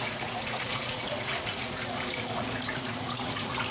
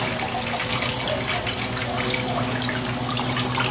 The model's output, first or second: first